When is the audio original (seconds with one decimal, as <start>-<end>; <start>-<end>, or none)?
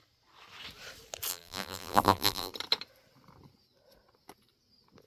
0.0-1.3; 2.5-5.1